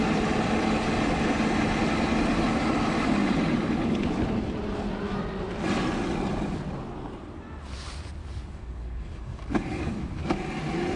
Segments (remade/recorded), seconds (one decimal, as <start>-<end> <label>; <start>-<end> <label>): 0.0-8.2 recorded; 8.2-10.4 remade; 10.4-11.0 recorded